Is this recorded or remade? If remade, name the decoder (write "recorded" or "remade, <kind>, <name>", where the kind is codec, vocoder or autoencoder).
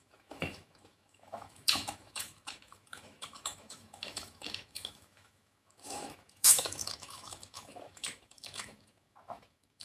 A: remade, autoencoder, DAC-VAE